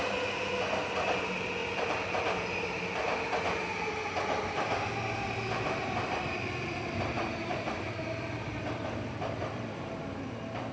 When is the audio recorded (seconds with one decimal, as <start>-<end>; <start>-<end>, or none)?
0.0-5.8

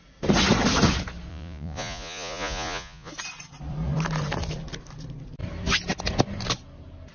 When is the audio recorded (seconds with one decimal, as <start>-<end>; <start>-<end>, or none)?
0.0-1.3; 3.1-7.1

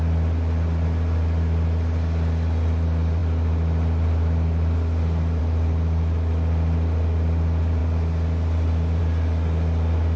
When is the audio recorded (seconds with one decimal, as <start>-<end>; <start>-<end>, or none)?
0.0-10.2